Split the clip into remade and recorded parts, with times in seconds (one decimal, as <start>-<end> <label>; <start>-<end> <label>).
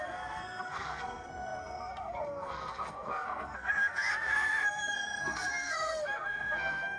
0.0-7.0 remade